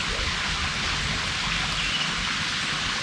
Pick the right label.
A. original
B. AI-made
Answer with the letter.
A